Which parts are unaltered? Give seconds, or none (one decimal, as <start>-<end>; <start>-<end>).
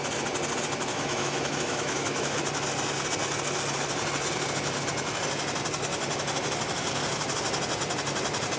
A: 0.0-0.9; 2.4-8.6